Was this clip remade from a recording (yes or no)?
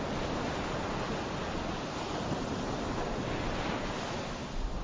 no